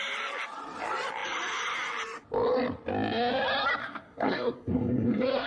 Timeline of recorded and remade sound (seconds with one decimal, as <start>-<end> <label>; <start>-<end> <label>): 0.0-3.8 recorded; 3.8-5.5 remade